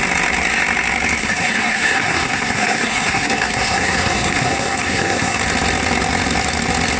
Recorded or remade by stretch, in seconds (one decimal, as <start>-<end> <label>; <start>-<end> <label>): 0.0-1.2 recorded; 1.2-5.4 remade; 5.4-7.0 recorded